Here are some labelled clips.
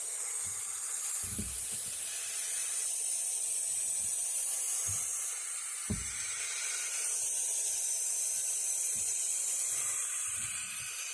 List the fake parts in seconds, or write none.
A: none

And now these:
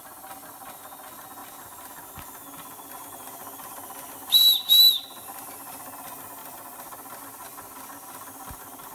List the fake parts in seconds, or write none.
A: none

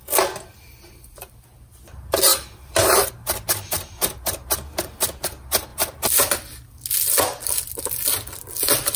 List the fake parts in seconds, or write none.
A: 2.3-3.1 (vocoder, BigVGAN v2); 5.7-6.3